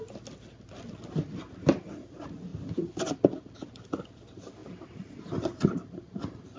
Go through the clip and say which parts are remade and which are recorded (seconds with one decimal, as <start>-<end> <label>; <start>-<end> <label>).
0.0-2.5 recorded; 2.5-3.7 remade; 3.7-4.6 recorded; 4.6-6.6 remade